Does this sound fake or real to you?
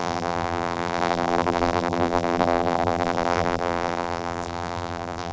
fake